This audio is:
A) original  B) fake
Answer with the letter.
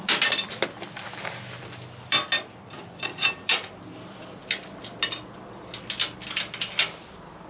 A